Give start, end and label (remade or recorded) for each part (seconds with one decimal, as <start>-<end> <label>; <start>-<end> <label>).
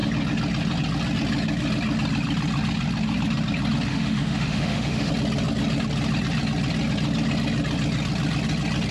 0.0-3.9 recorded; 3.9-5.1 remade; 5.1-8.9 recorded